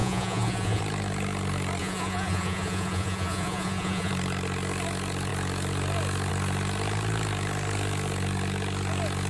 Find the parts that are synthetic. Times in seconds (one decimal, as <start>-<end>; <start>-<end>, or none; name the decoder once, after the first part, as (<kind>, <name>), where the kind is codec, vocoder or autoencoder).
0.0-0.8 (vocoder, Vocos); 1.8-4.1